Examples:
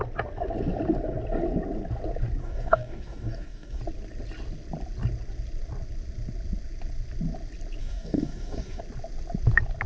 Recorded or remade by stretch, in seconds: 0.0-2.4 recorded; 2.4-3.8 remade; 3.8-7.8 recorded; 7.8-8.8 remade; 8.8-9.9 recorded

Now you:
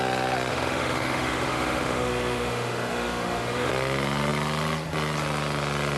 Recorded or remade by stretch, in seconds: 0.0-0.5 recorded; 0.5-3.7 remade; 3.7-6.0 recorded

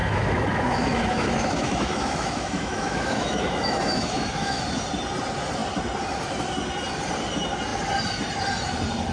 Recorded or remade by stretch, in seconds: 0.0-4.6 remade; 4.6-9.1 recorded

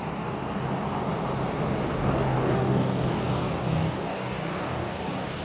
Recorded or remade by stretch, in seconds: 0.0-1.9 recorded; 1.9-5.4 remade

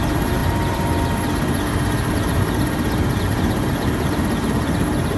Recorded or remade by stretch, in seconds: 0.0-5.2 remade